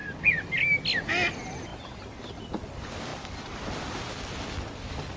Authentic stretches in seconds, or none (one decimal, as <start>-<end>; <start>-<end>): 0.0-5.2